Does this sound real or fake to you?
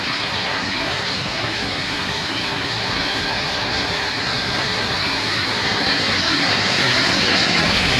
fake